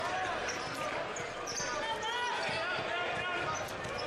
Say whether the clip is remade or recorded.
recorded